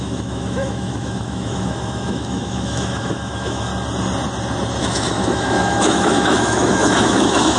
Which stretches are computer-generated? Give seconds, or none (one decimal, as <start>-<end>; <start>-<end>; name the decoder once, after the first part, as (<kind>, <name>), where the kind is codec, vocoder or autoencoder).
0.0-3.7 (autoencoder, DAC-VAE); 4.8-7.6